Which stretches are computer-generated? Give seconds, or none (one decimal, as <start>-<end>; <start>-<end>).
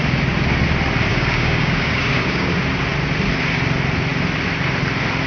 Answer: 1.1-2.5